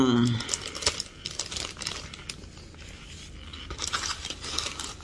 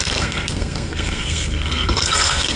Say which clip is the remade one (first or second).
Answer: second